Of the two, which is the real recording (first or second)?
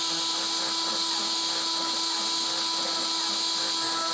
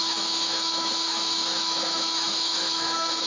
first